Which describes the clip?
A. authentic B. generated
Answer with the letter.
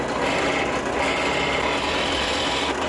A